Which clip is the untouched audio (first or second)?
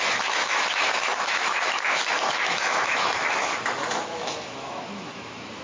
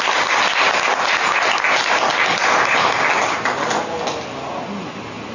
second